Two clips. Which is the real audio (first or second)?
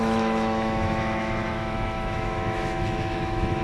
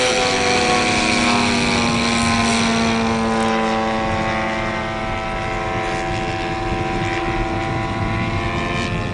second